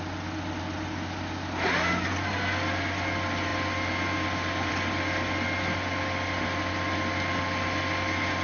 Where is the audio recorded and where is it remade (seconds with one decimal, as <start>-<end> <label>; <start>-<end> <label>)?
0.0-8.4 recorded

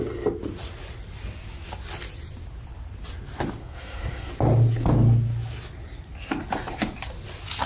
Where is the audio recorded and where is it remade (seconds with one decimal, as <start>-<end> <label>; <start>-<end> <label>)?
0.0-3.6 recorded; 3.6-4.3 remade; 4.3-7.7 recorded

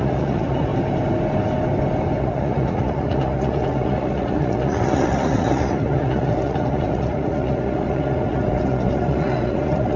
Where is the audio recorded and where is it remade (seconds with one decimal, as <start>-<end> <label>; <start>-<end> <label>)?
0.0-0.7 remade; 0.7-2.2 recorded; 2.2-10.0 remade